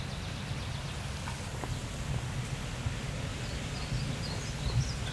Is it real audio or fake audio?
real